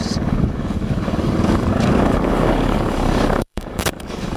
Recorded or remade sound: remade